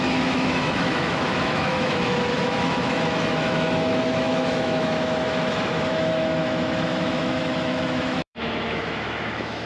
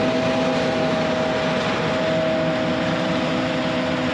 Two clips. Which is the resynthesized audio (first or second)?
first